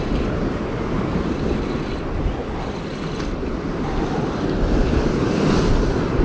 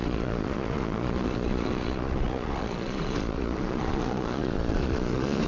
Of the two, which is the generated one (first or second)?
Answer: second